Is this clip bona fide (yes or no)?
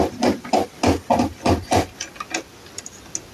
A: yes